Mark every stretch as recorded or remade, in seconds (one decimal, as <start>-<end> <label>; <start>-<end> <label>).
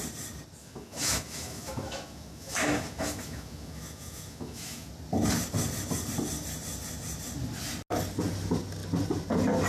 0.0-0.6 recorded; 0.6-4.9 remade; 4.9-9.7 recorded